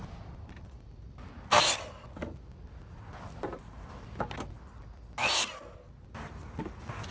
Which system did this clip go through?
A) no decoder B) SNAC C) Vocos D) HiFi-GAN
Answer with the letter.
A